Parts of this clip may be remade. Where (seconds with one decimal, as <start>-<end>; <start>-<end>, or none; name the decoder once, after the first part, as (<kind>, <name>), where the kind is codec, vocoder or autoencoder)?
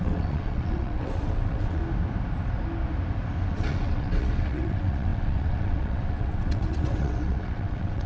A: 0.0-1.8 (vocoder, WaveNeXt); 3.5-8.1